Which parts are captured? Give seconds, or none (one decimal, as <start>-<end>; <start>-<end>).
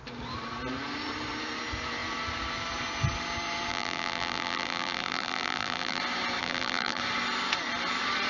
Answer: 0.0-3.7; 6.0-6.4; 7.0-8.3